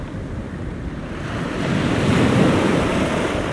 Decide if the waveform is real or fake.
real